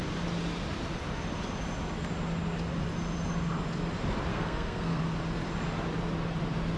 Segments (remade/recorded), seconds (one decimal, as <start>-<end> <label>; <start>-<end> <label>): 0.0-4.3 recorded; 4.3-5.0 remade; 5.0-6.8 recorded